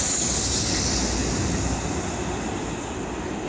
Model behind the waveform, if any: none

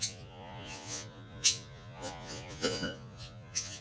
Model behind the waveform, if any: vocoder, Vocos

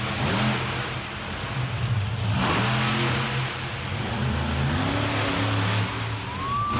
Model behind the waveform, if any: none